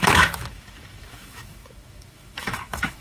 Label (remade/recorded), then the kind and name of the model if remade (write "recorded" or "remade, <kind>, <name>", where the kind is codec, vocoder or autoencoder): remade, autoencoder, DAC-VAE